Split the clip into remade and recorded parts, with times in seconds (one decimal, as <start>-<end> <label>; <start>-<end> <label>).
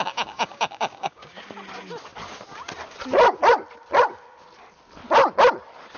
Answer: 0.0-1.4 remade; 1.4-6.0 recorded